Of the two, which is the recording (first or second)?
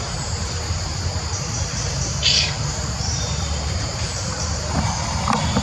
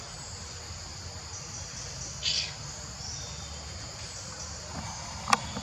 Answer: second